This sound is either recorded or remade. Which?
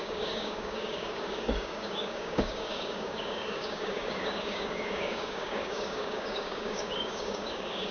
remade